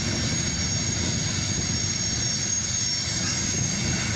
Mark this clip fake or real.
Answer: real